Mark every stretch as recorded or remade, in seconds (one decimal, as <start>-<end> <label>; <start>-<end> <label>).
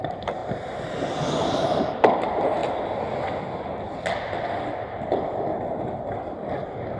0.0-7.0 recorded